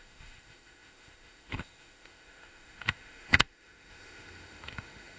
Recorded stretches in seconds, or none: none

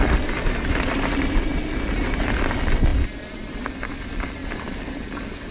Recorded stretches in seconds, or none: 0.0-5.5

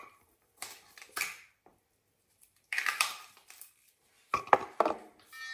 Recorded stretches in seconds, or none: 0.0-1.7; 3.9-5.5

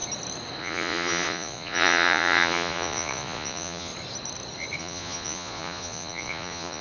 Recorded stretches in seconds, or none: 0.0-0.6; 3.9-4.8

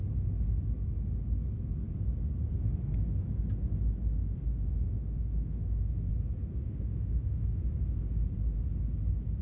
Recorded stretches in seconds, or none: 0.0-4.2; 6.1-6.5; 7.6-9.4

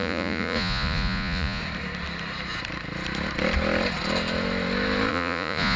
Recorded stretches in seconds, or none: 1.6-5.1

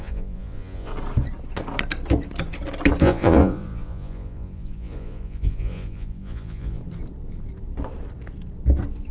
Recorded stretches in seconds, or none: 0.9-3.0; 6.8-9.1

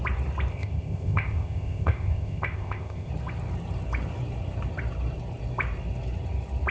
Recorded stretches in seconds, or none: 0.0-0.5; 3.1-6.7